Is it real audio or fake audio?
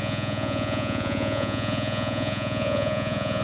fake